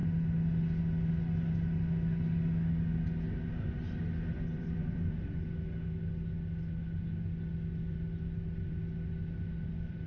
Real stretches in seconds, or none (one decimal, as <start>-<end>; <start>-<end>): 0.0-4.3; 5.2-10.1